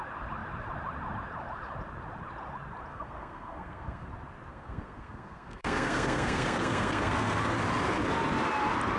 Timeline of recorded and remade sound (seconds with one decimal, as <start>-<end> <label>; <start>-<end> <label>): 0.0-2.9 recorded; 2.9-4.1 remade; 4.1-4.5 recorded; 4.5-7.4 remade; 7.4-9.0 recorded